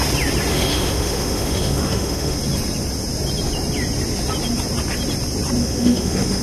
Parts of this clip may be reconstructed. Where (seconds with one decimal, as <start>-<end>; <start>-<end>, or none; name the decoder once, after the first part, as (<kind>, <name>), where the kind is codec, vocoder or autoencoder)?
0.5-2.4 (autoencoder, DAC-VAE); 5.6-6.4